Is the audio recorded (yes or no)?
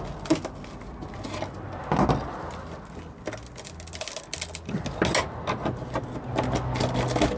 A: yes